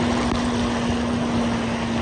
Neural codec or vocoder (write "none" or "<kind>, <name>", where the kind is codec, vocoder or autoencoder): none